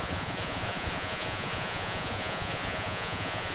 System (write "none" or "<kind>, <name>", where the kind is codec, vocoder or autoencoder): vocoder, Vocos